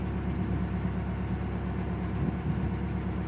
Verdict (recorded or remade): recorded